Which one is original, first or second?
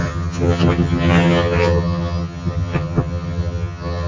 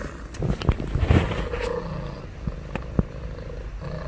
second